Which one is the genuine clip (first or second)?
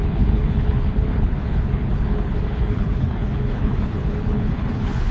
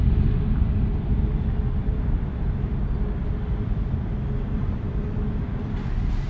second